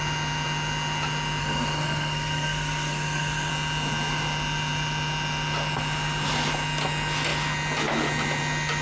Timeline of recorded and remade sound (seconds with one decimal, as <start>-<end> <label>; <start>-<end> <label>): 0.0-1.4 recorded; 1.4-3.5 remade; 3.5-8.8 recorded